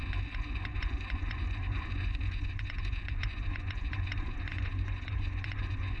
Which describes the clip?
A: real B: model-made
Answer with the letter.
B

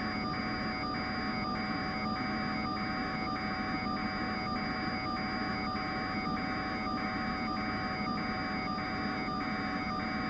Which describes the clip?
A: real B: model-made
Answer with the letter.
A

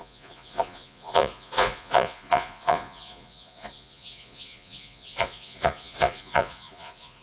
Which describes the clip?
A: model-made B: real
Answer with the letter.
A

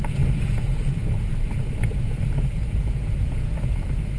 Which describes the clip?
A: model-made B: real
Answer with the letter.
A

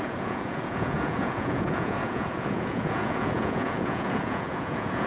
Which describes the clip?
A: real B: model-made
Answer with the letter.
B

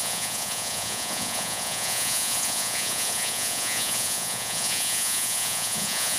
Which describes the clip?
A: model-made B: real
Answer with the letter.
A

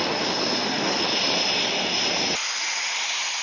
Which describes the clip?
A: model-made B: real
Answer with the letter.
B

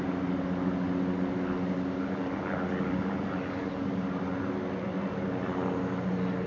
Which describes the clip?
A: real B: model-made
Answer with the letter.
A